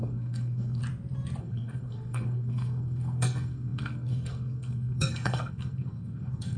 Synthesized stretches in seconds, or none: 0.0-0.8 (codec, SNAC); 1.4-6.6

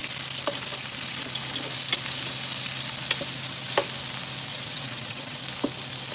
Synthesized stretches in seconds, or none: 4.5-5.4 (vocoder, WaveNeXt)